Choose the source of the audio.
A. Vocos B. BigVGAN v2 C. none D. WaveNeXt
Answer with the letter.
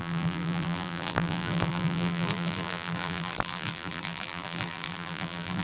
B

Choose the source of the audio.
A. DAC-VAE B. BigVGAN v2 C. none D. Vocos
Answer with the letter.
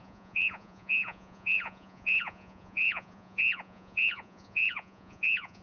D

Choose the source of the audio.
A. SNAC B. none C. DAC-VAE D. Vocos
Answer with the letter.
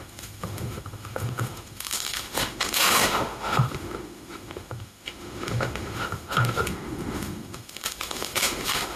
C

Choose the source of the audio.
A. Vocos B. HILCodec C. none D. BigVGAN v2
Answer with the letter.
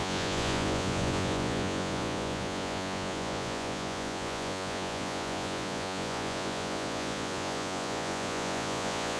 A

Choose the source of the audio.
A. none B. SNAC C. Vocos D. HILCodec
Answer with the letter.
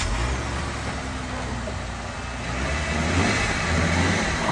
A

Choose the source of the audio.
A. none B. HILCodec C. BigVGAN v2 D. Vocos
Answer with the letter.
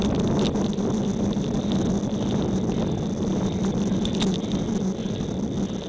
A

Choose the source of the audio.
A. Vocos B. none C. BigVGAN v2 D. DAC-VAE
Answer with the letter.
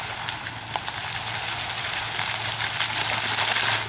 B